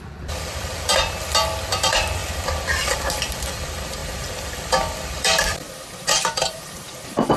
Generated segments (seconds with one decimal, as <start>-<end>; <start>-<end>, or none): 0.0-0.9; 1.6-7.4